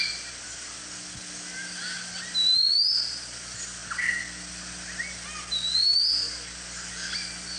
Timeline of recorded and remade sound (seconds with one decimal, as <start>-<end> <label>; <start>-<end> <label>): 0.0-7.6 recorded